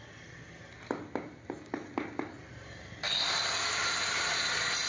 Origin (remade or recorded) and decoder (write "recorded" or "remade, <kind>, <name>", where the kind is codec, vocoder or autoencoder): recorded